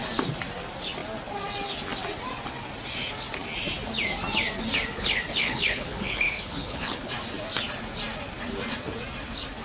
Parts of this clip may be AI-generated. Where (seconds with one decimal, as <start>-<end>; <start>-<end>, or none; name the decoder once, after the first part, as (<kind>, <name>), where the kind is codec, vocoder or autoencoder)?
4.9-7.1 (codec, HILCodec)